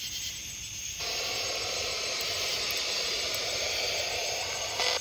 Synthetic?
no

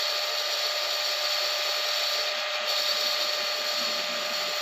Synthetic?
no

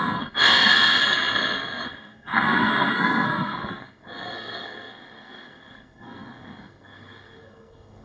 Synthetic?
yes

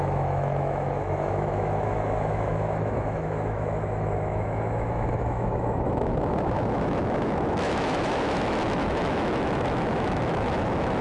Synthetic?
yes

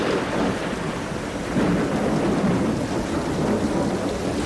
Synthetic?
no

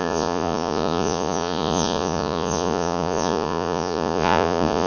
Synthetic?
yes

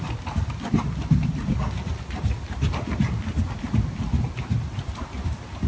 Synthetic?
no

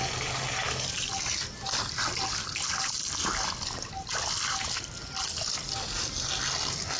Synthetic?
no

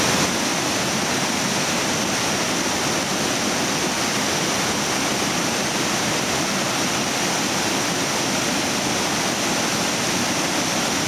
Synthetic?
no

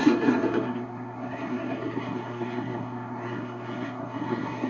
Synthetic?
yes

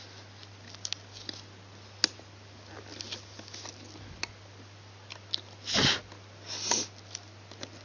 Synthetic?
no